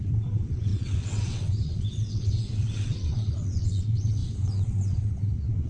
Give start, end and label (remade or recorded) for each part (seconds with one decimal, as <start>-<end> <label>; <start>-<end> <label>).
0.0-5.7 remade